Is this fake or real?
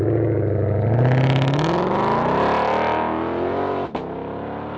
real